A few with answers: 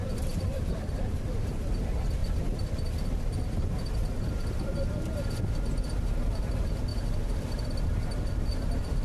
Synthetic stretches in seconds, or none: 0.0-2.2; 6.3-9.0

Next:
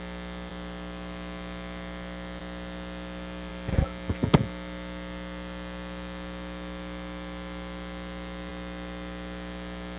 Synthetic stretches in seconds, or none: none

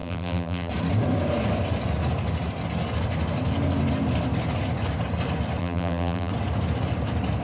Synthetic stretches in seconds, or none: 0.0-0.7; 5.6-6.3

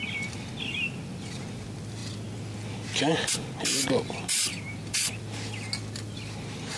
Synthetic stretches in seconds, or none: 4.5-5.2

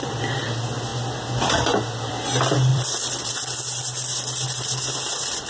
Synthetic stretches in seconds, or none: 2.7-3.3; 4.1-4.8

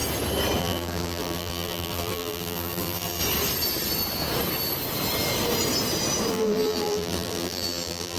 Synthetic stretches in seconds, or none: 0.6-3.2; 6.3-8.2